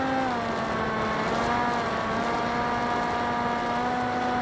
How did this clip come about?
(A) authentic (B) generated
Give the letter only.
A